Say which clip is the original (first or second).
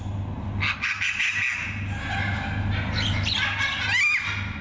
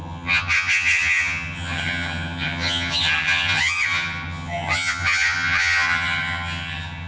first